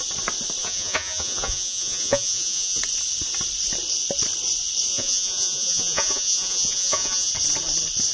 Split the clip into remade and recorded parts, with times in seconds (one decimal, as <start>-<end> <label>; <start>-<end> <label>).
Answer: 0.0-0.6 recorded; 0.6-2.8 remade; 2.8-4.9 recorded; 4.9-7.3 remade; 7.3-8.1 recorded